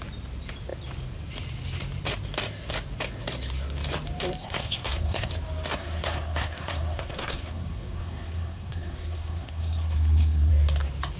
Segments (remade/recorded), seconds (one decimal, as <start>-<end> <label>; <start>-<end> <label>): 0.0-4.4 recorded; 4.4-5.3 remade; 5.3-5.8 recorded; 5.8-10.5 remade; 10.5-11.2 recorded